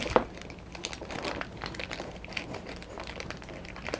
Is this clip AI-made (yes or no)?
no